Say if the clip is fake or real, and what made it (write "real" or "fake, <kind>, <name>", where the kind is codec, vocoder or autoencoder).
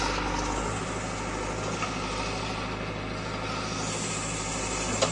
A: real